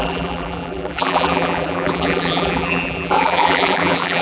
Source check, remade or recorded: remade